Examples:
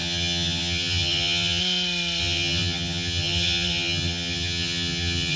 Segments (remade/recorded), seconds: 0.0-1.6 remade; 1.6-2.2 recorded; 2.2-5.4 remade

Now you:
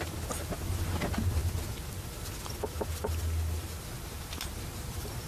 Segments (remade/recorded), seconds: 0.0-5.3 recorded

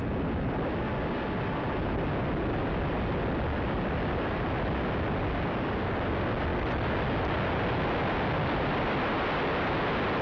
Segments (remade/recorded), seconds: 0.0-10.2 recorded